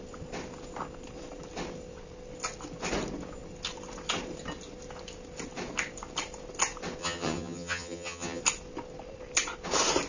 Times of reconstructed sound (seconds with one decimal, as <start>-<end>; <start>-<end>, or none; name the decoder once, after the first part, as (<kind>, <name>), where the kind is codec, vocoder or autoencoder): 7.0-8.4 (vocoder, HiFi-GAN)